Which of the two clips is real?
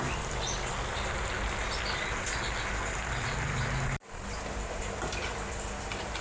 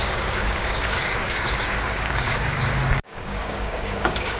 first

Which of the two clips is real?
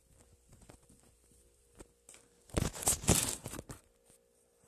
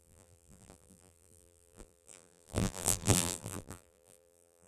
first